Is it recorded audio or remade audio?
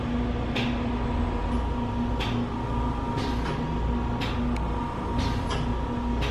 recorded